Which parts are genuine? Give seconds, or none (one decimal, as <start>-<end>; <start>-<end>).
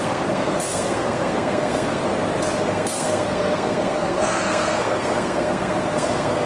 2.0-2.6